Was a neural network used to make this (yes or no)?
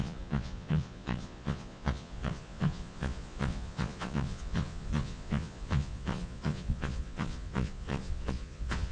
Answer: yes